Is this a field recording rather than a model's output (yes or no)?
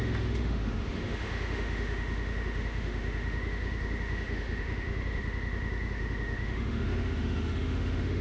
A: no